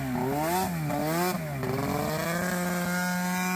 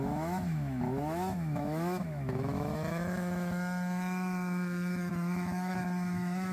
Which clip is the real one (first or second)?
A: first